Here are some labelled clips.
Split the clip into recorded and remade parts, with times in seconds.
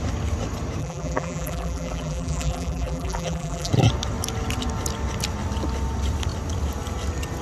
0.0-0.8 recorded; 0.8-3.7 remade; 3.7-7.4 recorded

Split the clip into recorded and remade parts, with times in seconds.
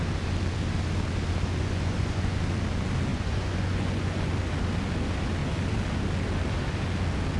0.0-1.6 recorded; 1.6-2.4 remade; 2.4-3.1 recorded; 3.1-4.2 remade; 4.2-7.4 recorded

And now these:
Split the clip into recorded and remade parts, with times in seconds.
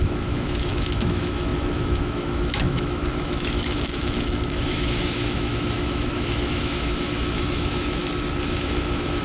0.0-8.0 remade; 8.0-8.6 recorded; 8.6-9.2 remade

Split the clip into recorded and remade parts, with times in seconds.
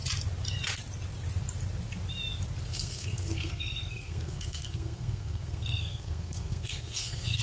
0.0-2.7 recorded; 2.7-7.4 remade